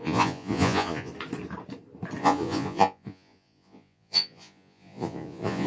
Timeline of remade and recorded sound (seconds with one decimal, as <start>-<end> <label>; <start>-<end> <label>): 0.0-1.1 remade; 1.1-2.2 recorded; 2.2-5.7 remade